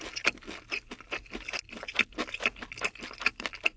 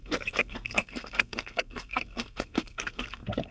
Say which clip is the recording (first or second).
first